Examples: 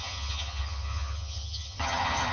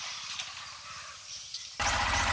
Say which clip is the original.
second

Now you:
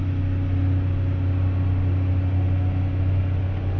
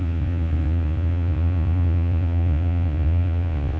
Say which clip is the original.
first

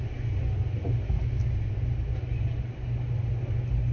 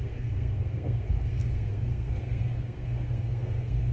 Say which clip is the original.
first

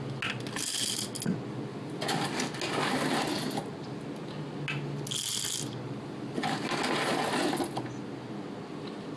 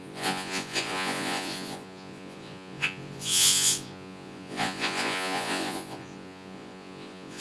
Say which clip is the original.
first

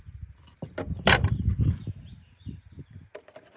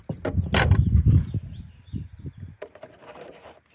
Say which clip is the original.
second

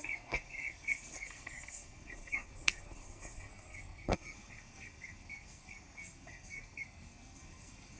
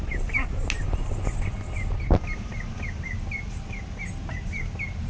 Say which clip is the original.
second